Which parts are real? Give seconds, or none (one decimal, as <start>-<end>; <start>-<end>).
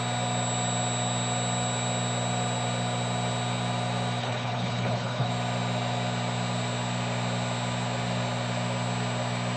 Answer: 0.0-4.2; 5.3-9.6